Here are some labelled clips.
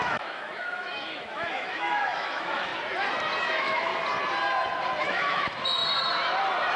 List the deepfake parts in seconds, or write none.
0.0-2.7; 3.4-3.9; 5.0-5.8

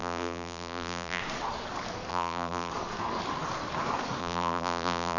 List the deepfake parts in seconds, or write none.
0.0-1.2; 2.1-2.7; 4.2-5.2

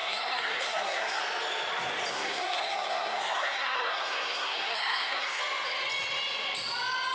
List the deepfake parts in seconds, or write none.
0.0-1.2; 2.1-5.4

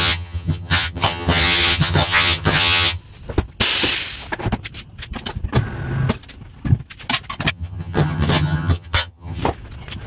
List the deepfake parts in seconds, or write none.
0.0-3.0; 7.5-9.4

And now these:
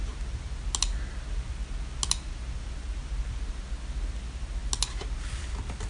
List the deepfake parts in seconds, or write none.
none

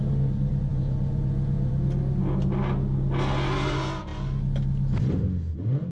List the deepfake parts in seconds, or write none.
0.7-1.7

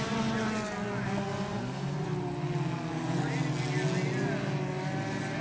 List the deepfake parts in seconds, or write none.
none

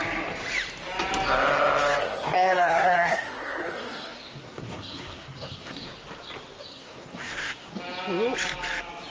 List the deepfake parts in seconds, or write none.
2.0-5.9; 6.7-7.7